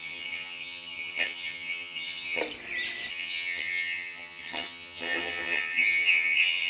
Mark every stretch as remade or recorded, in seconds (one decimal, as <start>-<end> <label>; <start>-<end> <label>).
0.0-2.4 remade; 2.4-3.1 recorded; 3.1-6.7 remade